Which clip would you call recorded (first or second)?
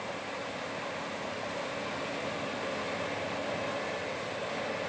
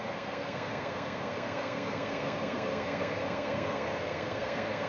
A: first